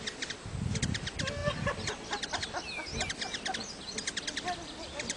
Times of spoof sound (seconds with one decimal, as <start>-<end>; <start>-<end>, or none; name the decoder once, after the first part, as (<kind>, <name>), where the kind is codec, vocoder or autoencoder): none